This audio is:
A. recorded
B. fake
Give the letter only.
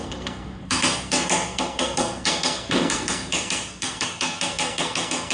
B